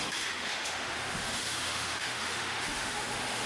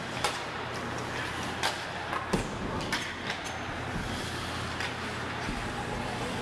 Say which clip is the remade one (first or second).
first